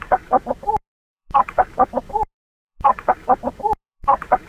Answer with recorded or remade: remade